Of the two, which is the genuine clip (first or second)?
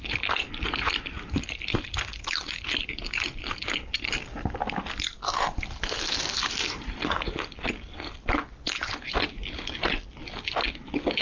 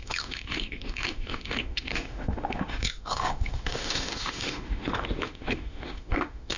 first